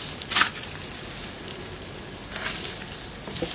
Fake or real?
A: real